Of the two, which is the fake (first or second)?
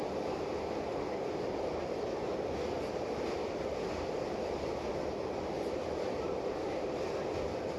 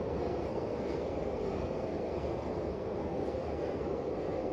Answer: second